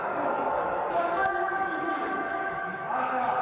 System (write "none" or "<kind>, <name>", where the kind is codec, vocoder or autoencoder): codec, DAC